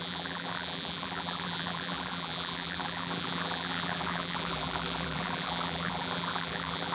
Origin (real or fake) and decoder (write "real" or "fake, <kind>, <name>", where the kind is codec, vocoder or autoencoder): fake, vocoder, BigVGAN v2